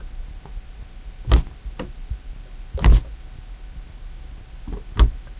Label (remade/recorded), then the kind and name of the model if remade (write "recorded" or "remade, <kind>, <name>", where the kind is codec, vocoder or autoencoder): recorded